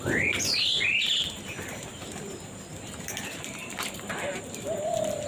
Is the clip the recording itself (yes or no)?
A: yes